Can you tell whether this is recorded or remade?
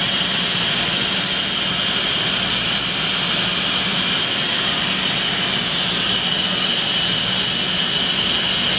recorded